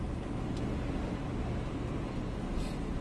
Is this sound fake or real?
real